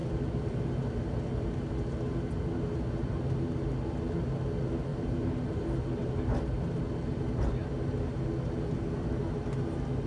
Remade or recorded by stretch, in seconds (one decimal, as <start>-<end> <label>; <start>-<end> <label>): 0.0-4.9 recorded; 4.9-5.6 remade; 5.6-6.0 recorded; 6.0-6.8 remade; 6.8-10.1 recorded